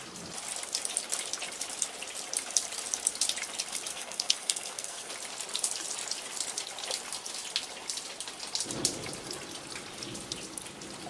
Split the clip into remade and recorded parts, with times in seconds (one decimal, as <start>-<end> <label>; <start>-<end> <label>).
0.0-3.9 recorded; 3.9-5.1 remade; 5.1-11.1 recorded